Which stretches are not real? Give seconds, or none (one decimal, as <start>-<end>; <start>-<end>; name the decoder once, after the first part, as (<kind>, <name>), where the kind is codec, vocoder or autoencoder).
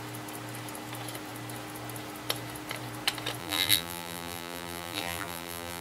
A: 3.4-5.8 (vocoder, BigVGAN v2)